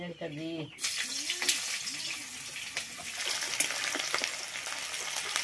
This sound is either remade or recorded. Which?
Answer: recorded